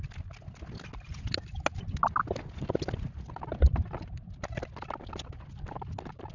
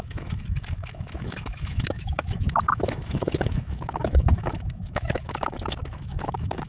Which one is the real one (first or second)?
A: first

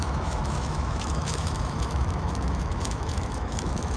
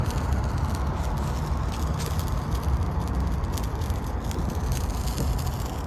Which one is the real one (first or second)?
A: second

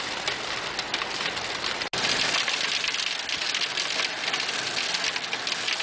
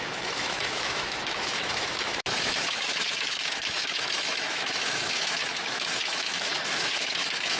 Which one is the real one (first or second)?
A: first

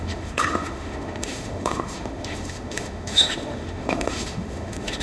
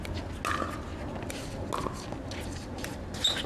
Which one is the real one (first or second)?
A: second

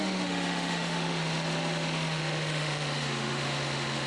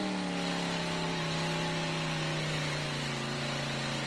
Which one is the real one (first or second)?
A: second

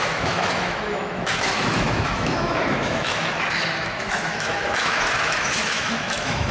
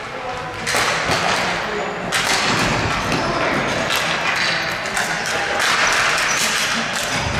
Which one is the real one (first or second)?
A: second